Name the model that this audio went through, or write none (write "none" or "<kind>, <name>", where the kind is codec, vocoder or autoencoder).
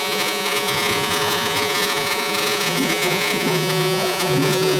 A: vocoder, Vocos